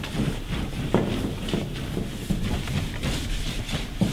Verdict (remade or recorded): remade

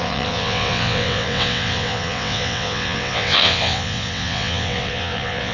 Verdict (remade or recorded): remade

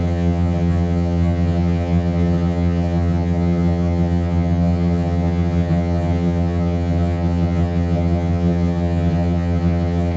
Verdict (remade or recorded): remade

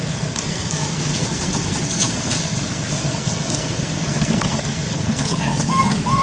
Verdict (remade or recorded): remade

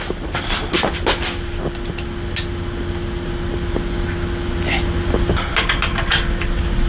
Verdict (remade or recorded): recorded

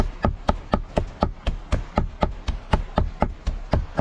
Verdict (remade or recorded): recorded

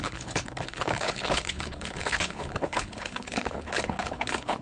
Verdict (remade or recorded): remade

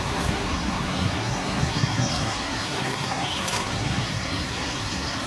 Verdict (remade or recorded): remade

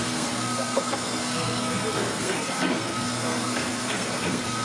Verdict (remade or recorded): remade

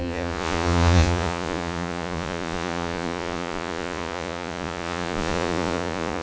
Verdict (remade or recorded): remade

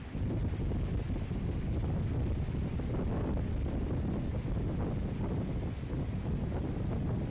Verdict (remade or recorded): recorded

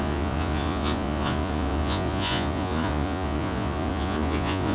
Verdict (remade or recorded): remade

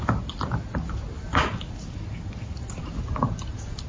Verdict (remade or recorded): recorded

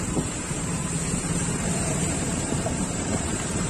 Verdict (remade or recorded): remade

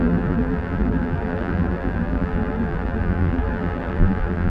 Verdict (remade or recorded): remade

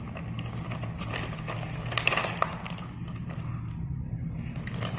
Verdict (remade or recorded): recorded